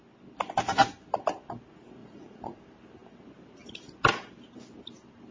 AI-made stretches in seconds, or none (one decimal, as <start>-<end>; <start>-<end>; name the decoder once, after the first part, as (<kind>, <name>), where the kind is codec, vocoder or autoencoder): 2.0-2.6 (vocoder, Vocos)